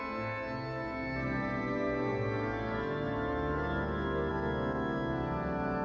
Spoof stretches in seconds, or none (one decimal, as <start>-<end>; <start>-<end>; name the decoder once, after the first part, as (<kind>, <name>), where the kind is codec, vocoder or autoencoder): none